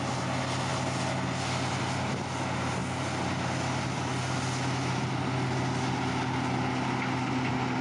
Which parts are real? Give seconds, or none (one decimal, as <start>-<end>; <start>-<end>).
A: 0.0-7.8